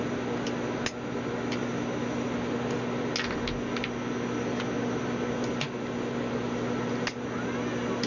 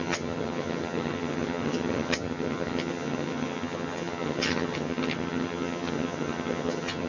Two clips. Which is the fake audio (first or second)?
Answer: second